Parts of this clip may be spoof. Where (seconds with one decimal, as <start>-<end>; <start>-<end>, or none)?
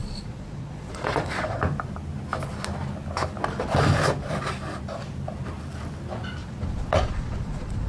0.0-1.6; 6.4-7.9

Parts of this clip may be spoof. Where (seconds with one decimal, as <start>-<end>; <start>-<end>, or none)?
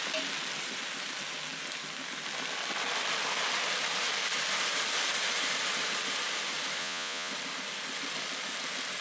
6.8-7.3